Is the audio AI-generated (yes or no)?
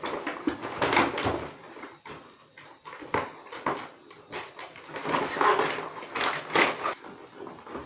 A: no